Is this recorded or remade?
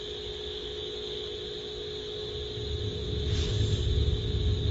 recorded